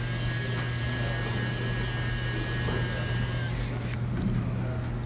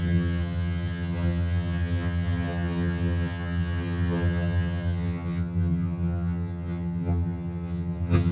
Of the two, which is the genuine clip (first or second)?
first